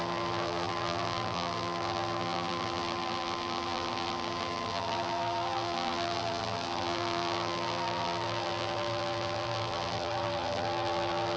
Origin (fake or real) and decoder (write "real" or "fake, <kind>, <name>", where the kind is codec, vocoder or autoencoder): fake, vocoder, BigVGAN v2